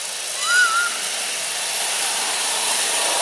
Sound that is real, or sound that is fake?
real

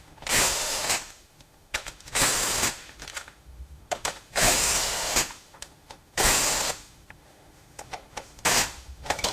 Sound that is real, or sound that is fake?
fake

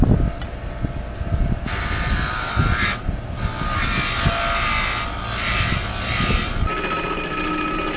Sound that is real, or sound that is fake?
real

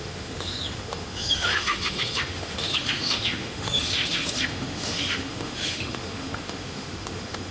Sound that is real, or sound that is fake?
fake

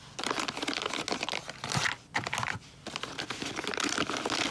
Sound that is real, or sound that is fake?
real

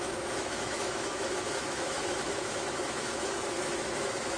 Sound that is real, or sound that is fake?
fake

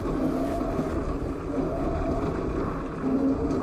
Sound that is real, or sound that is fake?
real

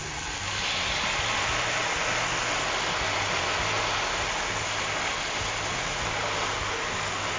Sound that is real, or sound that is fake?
real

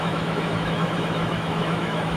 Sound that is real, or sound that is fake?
fake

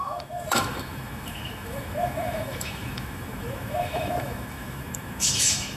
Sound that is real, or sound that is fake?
fake